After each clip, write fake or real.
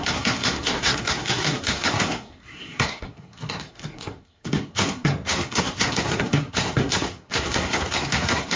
fake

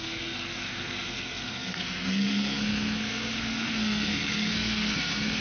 fake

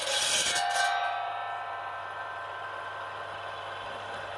real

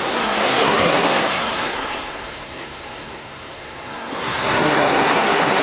fake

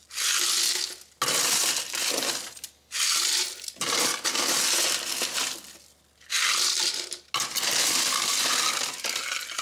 real